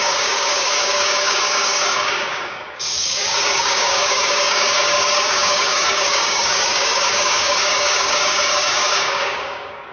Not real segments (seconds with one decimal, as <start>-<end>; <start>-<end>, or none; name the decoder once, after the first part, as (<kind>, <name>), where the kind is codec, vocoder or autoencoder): 0.0-9.9 (codec, DAC)